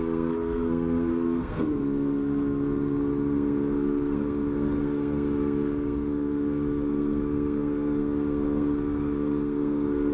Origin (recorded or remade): remade